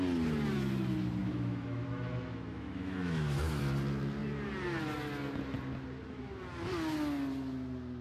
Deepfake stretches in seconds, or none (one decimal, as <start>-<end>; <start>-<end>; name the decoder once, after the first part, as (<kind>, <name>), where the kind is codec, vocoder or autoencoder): 1.2-3.6 (autoencoder, DAC-VAE)